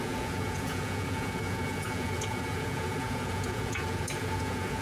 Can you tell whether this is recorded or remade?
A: remade